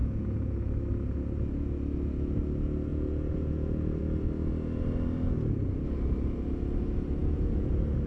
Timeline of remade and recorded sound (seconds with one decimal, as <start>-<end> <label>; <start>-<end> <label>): 0.0-0.7 remade; 0.7-2.9 recorded; 2.9-4.0 remade; 4.0-7.2 recorded; 7.2-8.1 remade